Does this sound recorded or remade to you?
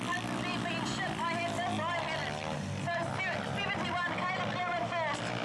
recorded